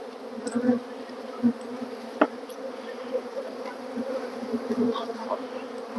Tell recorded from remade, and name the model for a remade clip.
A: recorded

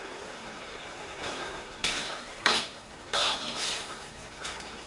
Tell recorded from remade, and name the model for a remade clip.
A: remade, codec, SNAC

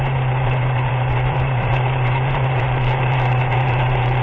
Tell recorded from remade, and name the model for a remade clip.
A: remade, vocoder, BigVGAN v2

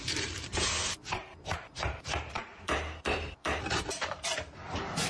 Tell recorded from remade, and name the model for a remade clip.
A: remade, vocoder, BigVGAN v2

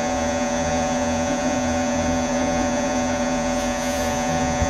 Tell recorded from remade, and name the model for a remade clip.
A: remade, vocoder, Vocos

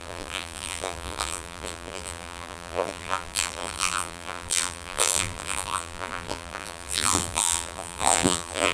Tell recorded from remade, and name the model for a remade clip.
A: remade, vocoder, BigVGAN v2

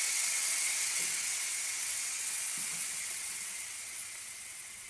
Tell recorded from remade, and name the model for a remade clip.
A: remade, vocoder, WaveNeXt